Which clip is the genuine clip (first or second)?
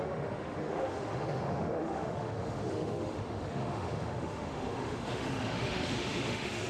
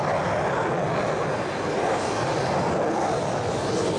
second